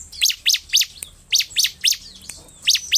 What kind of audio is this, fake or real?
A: real